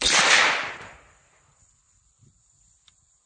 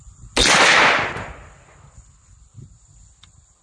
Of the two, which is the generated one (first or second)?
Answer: first